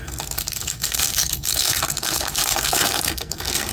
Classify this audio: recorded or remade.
remade